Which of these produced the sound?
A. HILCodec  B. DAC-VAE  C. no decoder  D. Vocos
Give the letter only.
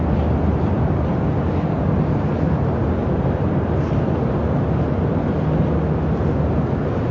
C